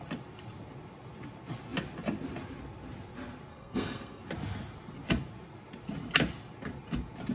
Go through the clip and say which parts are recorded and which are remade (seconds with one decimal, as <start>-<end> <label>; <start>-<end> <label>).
0.0-3.5 recorded; 3.5-4.2 remade; 4.2-7.3 recorded